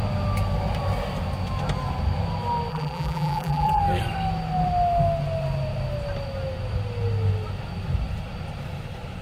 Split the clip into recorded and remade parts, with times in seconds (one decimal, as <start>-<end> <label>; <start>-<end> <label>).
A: 0.0-2.7 recorded; 2.7-3.8 remade; 3.8-9.2 recorded